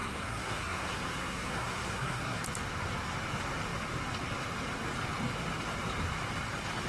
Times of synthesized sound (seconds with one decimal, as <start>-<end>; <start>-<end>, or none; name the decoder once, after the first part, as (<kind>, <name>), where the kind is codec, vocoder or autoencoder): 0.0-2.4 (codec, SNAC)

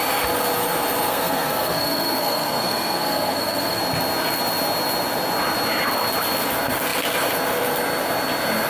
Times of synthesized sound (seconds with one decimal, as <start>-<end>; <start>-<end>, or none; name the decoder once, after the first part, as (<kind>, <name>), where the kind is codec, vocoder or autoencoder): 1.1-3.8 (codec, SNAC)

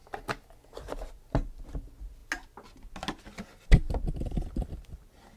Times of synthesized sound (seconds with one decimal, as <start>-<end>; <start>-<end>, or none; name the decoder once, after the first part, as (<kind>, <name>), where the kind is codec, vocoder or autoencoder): none

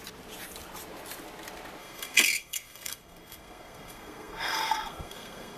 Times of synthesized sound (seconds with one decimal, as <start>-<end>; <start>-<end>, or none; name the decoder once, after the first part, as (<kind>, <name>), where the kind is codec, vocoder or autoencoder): 1.8-5.6 (codec, SNAC)

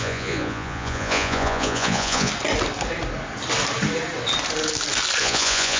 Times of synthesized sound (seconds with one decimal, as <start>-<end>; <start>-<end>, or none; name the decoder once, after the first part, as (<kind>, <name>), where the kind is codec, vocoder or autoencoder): 0.0-2.3 (vocoder, Vocos); 5.2-5.8

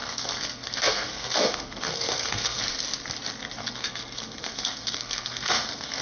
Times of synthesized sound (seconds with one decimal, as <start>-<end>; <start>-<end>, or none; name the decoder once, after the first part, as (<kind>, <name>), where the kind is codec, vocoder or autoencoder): 0.0-2.6 (codec, SNAC); 3.6-6.0

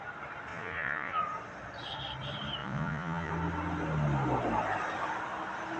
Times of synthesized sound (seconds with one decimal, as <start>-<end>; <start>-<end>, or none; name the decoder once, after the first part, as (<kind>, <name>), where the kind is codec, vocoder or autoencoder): 0.5-1.2 (vocoder, Vocos); 2.6-3.3

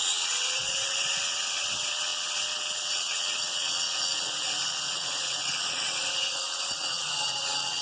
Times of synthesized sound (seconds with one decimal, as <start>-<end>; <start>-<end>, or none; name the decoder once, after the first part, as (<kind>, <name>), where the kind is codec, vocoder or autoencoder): 0.0-7.8 (vocoder, WaveNeXt)